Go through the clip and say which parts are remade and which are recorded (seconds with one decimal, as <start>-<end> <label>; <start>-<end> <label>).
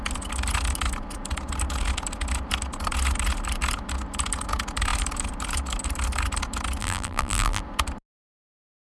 0.0-6.8 recorded; 6.8-7.6 remade; 7.6-8.9 recorded